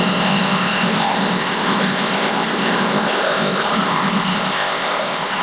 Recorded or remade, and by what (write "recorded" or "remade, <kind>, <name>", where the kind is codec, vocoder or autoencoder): remade, codec, ZipCodec